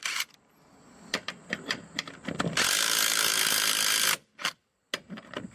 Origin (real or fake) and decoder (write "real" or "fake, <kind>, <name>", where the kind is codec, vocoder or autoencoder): real